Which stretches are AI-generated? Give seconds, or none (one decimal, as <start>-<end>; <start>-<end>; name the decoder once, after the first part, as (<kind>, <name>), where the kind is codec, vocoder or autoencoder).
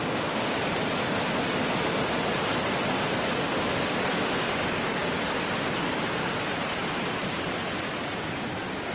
none